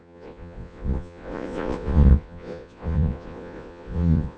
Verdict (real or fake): fake